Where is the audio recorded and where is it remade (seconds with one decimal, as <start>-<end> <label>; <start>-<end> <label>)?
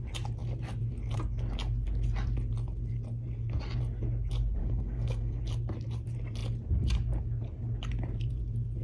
0.0-4.6 recorded; 4.6-5.4 remade; 5.4-8.8 recorded